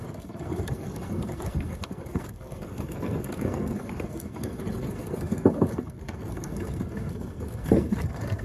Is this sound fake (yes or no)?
yes